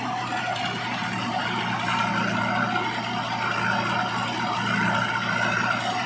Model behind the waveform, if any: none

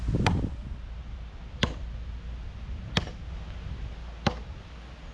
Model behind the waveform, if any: none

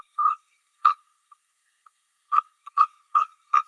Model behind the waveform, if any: codec, SNAC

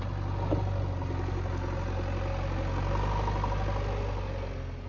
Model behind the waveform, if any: none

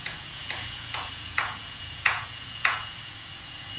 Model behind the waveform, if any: vocoder, Vocos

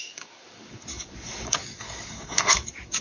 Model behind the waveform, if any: codec, DAC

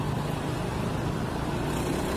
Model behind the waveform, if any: none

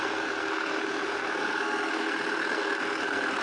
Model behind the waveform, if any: codec, SNAC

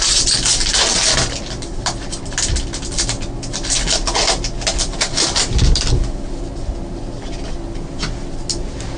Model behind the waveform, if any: none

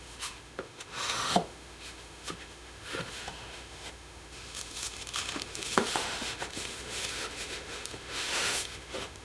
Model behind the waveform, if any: autoencoder, DAC-VAE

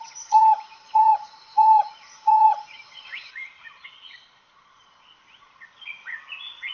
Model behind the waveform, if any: vocoder, Vocos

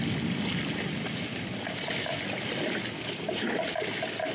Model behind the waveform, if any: none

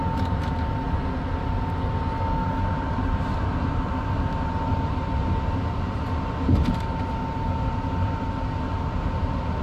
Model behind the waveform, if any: none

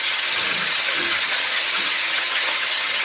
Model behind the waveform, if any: vocoder, HiFi-GAN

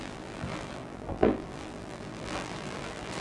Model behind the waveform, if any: vocoder, BigVGAN v2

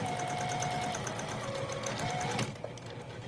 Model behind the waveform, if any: none